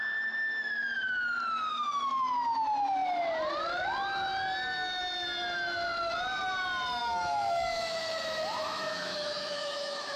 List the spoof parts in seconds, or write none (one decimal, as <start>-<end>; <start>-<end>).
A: 1.7-2.3; 7.0-10.2